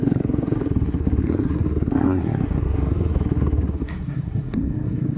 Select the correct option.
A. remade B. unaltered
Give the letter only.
A